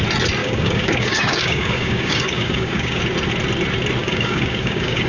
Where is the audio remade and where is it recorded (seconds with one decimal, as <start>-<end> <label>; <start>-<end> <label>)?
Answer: 0.0-0.4 recorded; 0.4-3.0 remade; 3.0-4.0 recorded; 4.0-5.1 remade